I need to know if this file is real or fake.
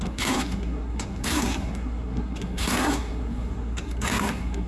fake